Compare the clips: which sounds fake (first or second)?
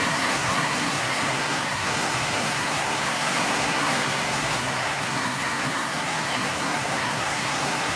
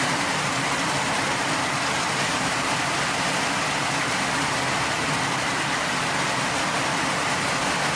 first